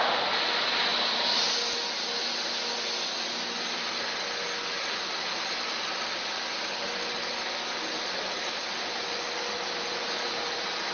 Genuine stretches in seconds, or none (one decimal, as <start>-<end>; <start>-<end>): 0.0-10.9